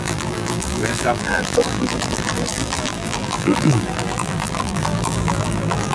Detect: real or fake fake